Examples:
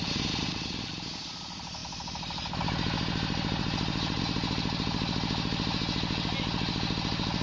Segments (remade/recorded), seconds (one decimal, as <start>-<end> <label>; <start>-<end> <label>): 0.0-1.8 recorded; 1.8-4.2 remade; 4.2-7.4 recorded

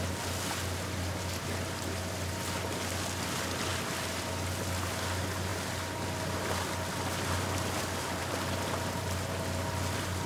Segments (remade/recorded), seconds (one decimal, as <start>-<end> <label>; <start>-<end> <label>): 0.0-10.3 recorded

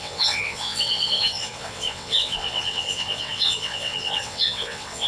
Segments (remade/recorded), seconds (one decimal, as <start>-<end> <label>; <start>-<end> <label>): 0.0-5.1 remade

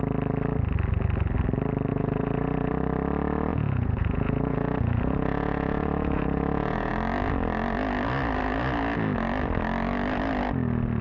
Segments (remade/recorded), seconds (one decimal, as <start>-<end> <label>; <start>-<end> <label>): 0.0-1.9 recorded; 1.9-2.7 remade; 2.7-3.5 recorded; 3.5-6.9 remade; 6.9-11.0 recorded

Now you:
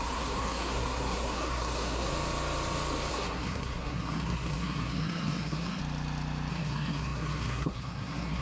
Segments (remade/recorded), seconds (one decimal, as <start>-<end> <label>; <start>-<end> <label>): 0.0-2.1 remade; 2.1-3.1 recorded; 3.1-5.8 remade; 5.8-6.5 recorded; 6.5-8.4 remade

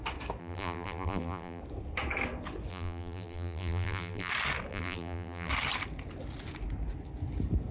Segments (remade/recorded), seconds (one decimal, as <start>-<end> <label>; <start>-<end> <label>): 0.0-0.4 recorded; 0.4-1.6 remade; 1.6-2.7 recorded; 2.7-4.3 remade; 4.3-4.7 recorded; 4.7-5.5 remade; 5.5-7.7 recorded